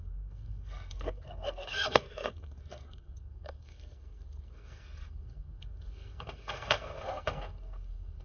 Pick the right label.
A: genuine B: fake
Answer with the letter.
B